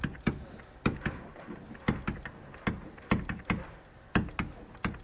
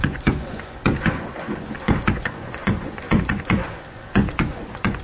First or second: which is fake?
second